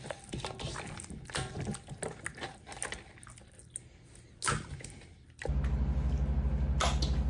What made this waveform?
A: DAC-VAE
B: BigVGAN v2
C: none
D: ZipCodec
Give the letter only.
C